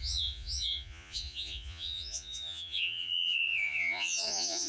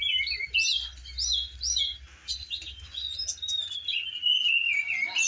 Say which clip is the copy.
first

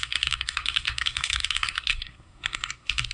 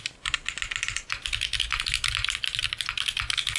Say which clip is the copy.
first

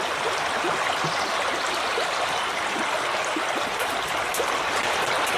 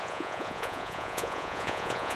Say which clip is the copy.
second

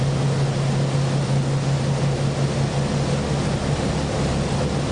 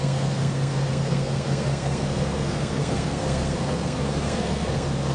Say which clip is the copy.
second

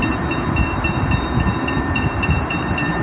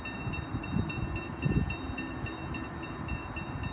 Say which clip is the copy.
first